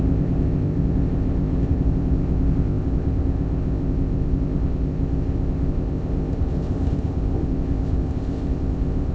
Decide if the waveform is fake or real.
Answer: fake